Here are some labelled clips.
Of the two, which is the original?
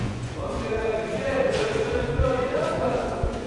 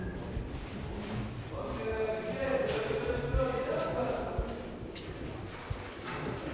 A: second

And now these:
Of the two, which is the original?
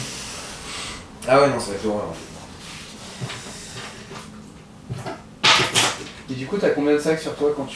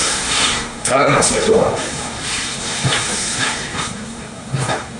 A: first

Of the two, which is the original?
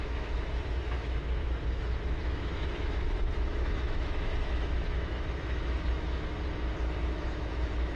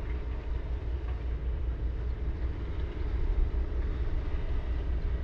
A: second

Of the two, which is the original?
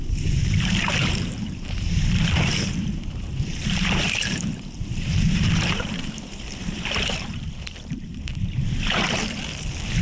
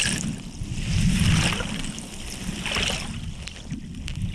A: second